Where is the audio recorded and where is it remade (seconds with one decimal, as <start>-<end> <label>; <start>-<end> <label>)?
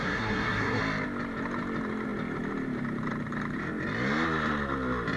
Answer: 0.0-0.8 remade; 0.8-5.2 recorded